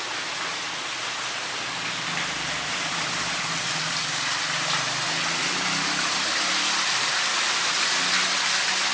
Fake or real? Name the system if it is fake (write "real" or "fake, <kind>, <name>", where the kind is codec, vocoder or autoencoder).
real